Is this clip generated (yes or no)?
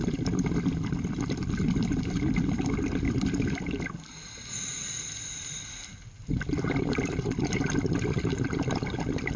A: no